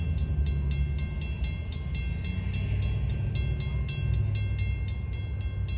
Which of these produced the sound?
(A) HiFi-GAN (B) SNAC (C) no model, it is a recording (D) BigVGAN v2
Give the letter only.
C